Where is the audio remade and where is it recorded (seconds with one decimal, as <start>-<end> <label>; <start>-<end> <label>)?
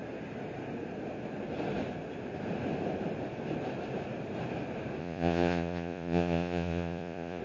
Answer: 0.0-5.0 recorded; 5.0-7.4 remade